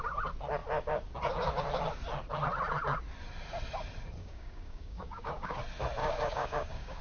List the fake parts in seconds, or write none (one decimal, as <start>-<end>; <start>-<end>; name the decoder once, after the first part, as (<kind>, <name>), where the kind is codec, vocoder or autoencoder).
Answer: 4.2-5.6 (codec, DAC); 6.0-7.0